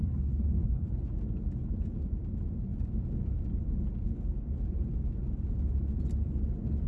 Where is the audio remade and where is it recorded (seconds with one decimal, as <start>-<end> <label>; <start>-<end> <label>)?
0.0-0.9 remade; 0.9-6.9 recorded